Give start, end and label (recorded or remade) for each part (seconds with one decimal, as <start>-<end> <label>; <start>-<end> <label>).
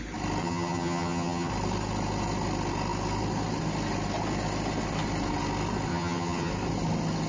0.0-0.4 recorded; 0.4-1.5 remade; 1.5-5.9 recorded; 5.9-6.5 remade; 6.5-7.3 recorded